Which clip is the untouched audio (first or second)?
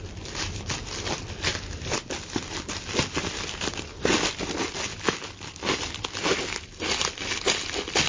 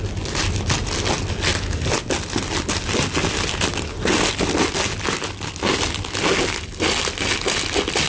second